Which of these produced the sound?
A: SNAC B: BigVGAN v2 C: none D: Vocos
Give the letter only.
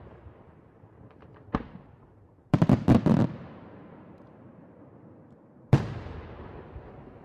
B